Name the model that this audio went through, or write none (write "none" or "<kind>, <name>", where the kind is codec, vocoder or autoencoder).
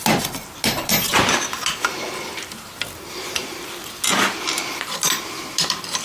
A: none